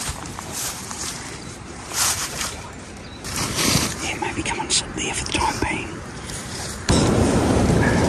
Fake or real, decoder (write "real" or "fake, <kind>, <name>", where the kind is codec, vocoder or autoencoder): fake, vocoder, BigVGAN v2